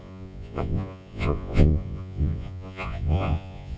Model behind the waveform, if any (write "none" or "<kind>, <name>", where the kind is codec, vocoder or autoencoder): vocoder, Vocos